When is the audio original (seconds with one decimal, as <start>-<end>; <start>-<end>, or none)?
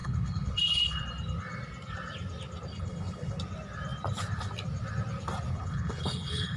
1.0-2.7; 3.4-5.5